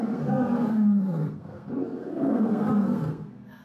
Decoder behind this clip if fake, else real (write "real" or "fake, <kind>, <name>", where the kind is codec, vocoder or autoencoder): fake, codec, SNAC